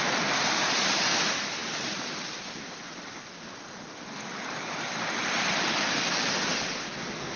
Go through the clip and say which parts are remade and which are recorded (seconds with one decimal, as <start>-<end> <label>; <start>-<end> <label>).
0.0-7.4 recorded